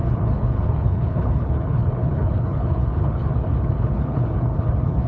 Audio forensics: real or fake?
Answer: fake